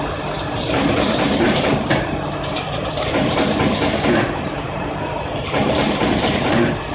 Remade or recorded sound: remade